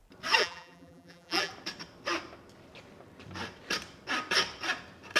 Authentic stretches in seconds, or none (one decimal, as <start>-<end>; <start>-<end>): 0.0-0.4; 1.5-5.2